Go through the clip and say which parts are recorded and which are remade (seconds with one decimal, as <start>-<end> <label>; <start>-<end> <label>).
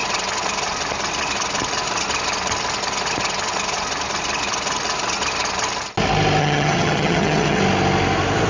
0.0-6.4 recorded; 6.4-7.6 remade; 7.6-8.5 recorded